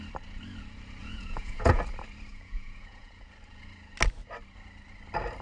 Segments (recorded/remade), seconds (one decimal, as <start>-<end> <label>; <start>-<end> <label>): 0.0-1.0 recorded; 1.0-1.8 remade; 1.8-2.3 recorded; 2.3-3.3 remade; 3.3-5.4 recorded